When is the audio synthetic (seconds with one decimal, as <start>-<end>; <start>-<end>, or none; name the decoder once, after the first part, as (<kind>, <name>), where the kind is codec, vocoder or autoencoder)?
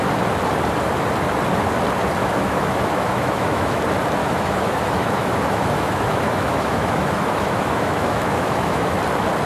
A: 2.2-3.8 (autoencoder, DAC-VAE); 4.2-9.0